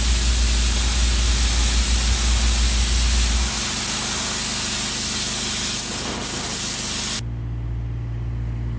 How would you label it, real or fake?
real